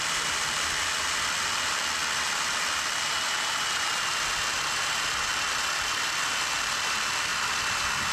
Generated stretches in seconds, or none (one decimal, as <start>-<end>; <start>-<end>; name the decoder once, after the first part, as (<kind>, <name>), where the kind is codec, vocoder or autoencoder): 0.0-2.0 (vocoder, BigVGAN v2); 3.0-7.3